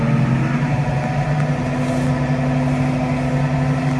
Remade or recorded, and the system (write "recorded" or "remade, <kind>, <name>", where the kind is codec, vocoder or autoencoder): recorded